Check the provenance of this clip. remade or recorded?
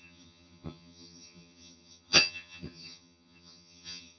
remade